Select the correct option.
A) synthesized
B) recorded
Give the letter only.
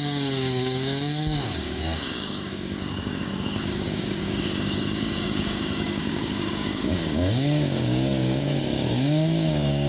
A